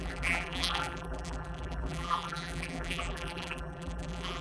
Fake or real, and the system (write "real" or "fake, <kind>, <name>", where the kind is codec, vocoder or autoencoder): fake, vocoder, BigVGAN v2